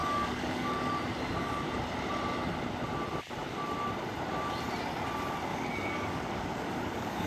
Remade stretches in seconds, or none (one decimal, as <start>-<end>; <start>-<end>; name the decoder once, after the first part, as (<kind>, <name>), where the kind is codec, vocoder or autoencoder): 0.0-0.9 (codec, DAC); 5.5-7.3